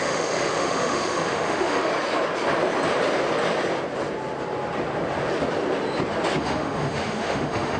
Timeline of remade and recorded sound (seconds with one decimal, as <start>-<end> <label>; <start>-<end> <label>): 0.0-1.9 remade; 1.9-6.4 recorded; 6.4-7.8 remade